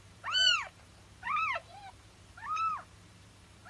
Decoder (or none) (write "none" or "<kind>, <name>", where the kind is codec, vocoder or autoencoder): vocoder, BigVGAN v2